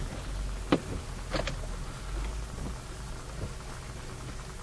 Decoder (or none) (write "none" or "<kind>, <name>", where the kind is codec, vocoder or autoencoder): none